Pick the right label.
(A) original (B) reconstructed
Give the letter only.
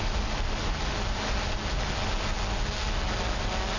A